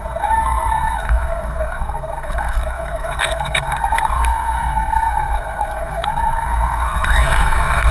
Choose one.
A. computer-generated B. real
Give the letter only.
A